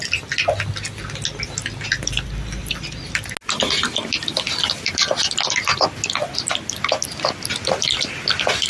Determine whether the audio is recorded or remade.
recorded